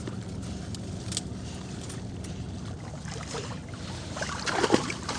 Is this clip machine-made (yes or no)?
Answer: no